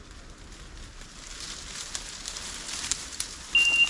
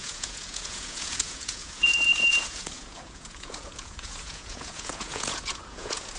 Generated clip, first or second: second